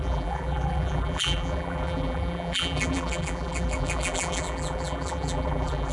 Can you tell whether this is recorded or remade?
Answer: remade